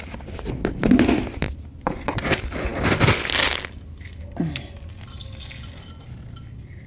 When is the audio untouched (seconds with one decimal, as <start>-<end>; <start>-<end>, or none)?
0.0-6.9